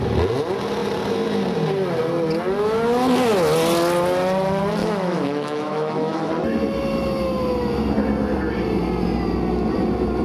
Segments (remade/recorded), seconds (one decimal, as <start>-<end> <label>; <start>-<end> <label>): 0.0-4.8 recorded; 4.8-6.3 remade; 6.3-10.2 recorded